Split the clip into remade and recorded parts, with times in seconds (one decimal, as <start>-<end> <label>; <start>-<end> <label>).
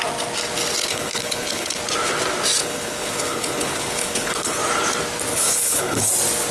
0.0-0.9 recorded; 0.9-1.8 remade; 1.8-2.6 recorded; 2.6-4.6 remade; 4.6-5.3 recorded; 5.3-6.1 remade; 6.1-6.5 recorded